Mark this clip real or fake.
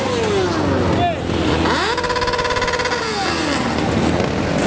real